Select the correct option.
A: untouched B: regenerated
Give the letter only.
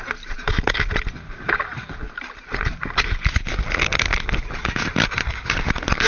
A